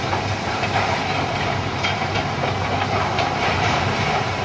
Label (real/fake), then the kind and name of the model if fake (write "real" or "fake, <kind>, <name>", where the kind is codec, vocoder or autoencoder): fake, vocoder, BigVGAN v2